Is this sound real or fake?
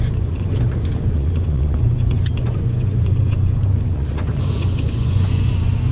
fake